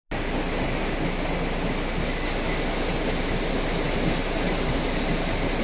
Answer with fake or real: real